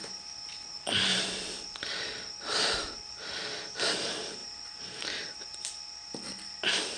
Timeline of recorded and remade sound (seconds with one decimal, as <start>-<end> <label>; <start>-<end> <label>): 0.0-1.1 recorded; 1.1-3.8 remade; 3.8-4.4 recorded; 4.4-5.6 remade; 5.6-7.0 recorded